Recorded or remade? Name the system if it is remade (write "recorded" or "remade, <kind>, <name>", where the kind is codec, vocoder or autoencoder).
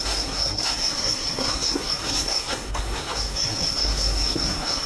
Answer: remade, codec, SNAC